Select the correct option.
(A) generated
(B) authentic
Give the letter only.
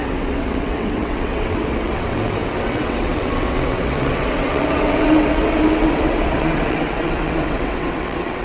A